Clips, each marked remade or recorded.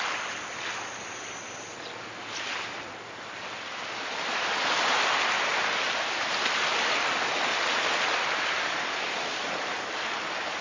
recorded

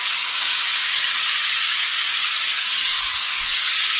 remade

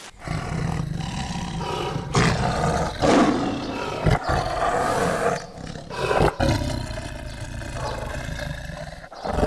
recorded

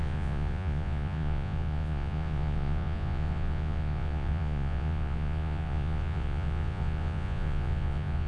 remade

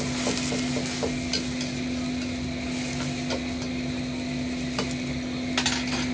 recorded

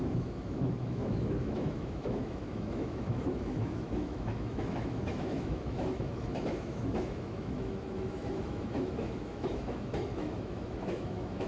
remade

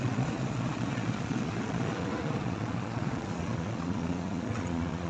remade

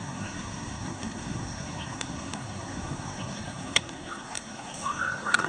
remade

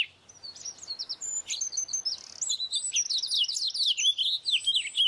recorded